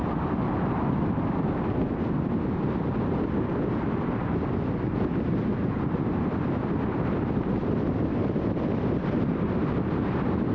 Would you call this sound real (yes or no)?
no